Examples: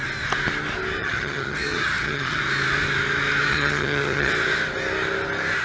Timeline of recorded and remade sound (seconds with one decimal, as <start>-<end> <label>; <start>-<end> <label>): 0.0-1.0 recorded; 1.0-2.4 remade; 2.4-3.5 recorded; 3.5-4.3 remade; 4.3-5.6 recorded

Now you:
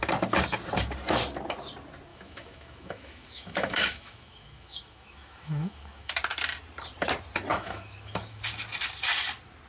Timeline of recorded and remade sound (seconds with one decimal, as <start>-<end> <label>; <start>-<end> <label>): 0.0-2.1 recorded; 2.1-6.1 remade; 6.1-7.5 recorded; 7.5-8.4 remade; 8.4-9.7 recorded

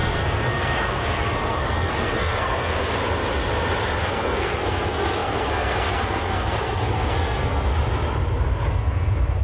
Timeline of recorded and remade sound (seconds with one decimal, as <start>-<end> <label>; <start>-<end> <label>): 0.0-3.0 remade; 3.0-4.0 recorded; 4.0-7.7 remade; 7.7-8.7 recorded; 8.7-9.4 remade